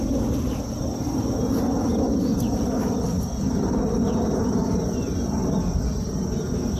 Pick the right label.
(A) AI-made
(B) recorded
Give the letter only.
B